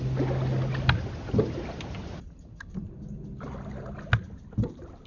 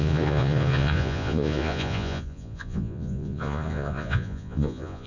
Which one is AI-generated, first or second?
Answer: second